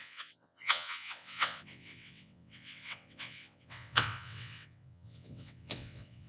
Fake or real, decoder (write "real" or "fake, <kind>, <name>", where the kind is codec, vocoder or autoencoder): fake, vocoder, WaveNeXt